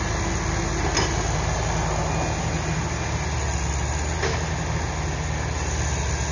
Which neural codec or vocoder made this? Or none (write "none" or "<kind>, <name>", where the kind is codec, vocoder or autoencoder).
none